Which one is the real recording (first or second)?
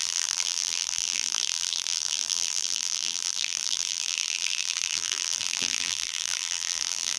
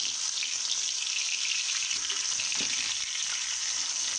second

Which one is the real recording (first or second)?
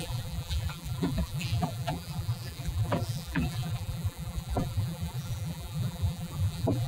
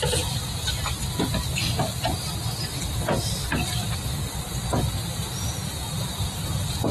second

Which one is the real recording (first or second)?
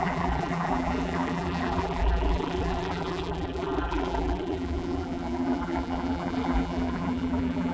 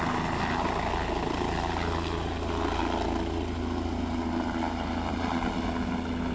second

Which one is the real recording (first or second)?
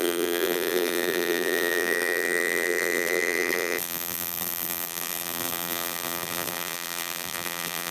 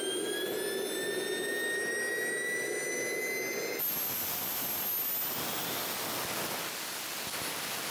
second